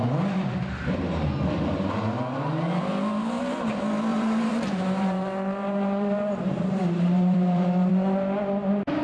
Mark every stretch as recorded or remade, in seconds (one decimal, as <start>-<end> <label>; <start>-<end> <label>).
0.0-4.1 recorded; 4.1-7.9 remade; 7.9-9.0 recorded